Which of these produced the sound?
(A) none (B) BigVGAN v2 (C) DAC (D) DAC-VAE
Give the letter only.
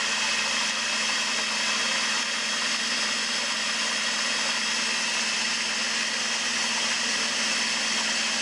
A